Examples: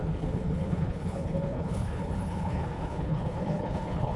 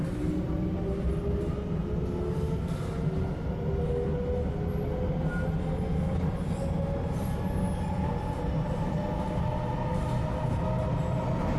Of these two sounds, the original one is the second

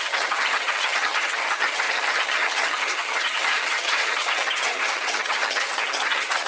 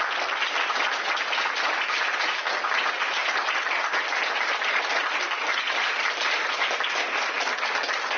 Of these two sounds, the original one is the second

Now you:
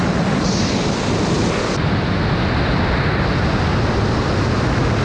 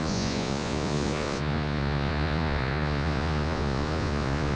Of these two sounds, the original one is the first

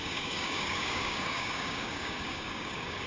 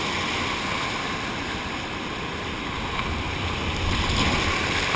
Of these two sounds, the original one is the second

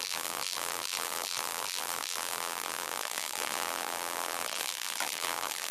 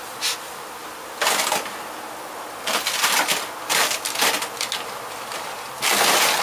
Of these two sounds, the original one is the second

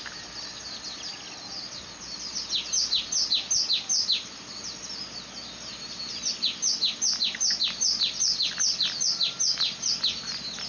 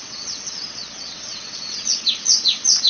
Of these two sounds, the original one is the first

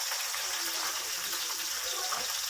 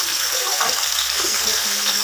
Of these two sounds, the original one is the first